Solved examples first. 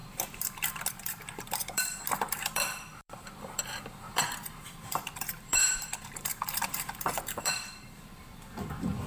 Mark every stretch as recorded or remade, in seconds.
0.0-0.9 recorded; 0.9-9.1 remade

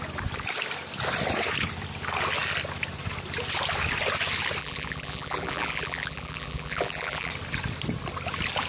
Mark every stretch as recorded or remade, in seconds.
0.0-4.6 recorded; 4.6-7.3 remade; 7.3-8.7 recorded

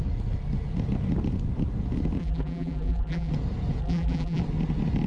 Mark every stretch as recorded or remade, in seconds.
0.0-2.2 recorded; 2.2-3.3 remade; 3.3-3.8 recorded; 3.8-4.4 remade; 4.4-5.1 recorded

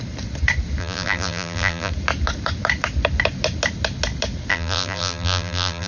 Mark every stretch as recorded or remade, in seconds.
0.0-0.8 recorded; 0.8-1.9 remade; 1.9-4.5 recorded; 4.5-5.9 remade

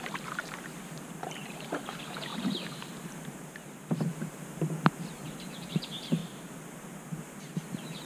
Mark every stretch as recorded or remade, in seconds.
0.0-6.2 remade; 6.2-7.1 recorded; 7.1-8.1 remade

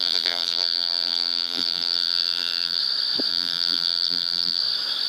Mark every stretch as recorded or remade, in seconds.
0.0-2.8 remade; 2.8-3.3 recorded; 3.3-4.6 remade; 4.6-5.1 recorded

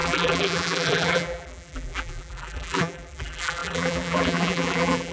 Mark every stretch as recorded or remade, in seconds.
0.0-5.1 remade

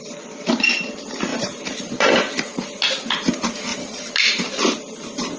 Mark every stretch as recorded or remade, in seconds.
0.0-1.3 recorded; 1.3-2.2 remade; 2.2-3.7 recorded; 3.7-4.6 remade; 4.6-5.4 recorded